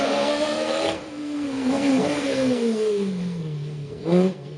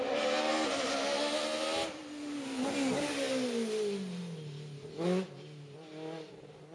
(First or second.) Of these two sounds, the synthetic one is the first